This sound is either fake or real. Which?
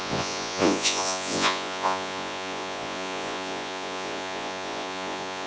fake